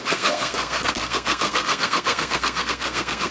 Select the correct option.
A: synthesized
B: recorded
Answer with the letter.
A